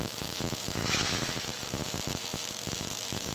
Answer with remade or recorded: remade